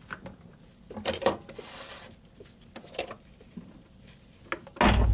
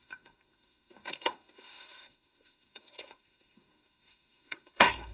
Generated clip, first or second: second